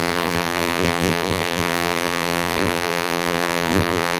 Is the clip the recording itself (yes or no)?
no